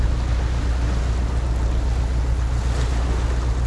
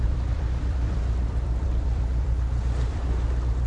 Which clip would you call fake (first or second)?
second